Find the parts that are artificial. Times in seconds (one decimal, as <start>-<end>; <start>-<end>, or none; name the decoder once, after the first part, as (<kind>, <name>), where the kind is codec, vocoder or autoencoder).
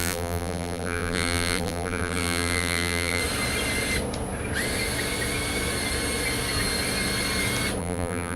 0.0-3.2 (vocoder, BigVGAN v2); 7.8-8.4